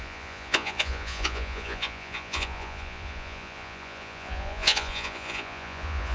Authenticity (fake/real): fake